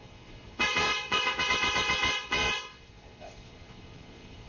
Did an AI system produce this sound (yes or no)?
yes